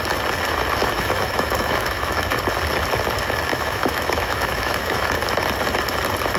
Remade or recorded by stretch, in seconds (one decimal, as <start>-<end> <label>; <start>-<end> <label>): 0.0-0.8 recorded; 0.8-2.4 remade; 2.4-3.5 recorded; 3.5-5.1 remade; 5.1-6.4 recorded